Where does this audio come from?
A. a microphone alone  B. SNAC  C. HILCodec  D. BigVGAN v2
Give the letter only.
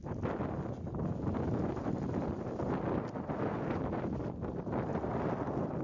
A